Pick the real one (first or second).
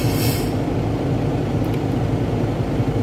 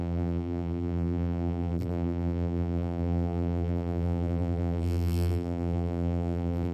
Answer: first